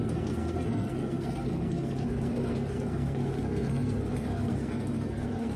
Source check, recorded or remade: remade